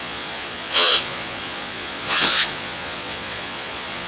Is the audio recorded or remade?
remade